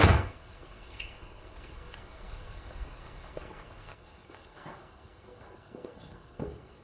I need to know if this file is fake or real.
fake